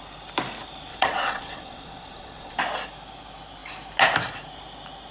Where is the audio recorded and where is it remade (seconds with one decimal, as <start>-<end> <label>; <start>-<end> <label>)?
0.0-0.9 recorded; 0.9-2.6 remade; 2.6-5.1 recorded